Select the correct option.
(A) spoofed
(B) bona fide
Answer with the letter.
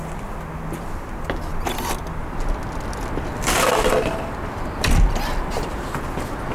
B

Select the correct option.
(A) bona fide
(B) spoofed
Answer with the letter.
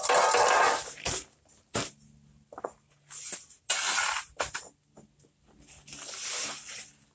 A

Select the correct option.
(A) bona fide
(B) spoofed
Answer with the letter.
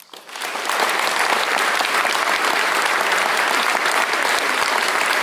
A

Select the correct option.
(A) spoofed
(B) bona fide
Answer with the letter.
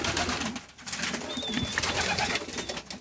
B